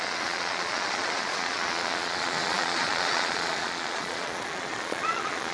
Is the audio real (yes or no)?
no